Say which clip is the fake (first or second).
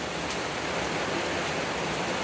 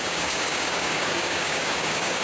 second